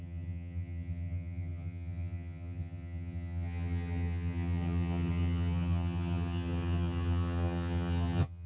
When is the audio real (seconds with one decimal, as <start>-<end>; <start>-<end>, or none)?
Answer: none